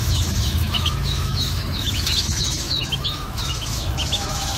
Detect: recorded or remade remade